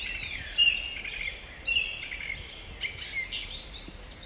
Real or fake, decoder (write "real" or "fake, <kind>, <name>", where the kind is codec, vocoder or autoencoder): real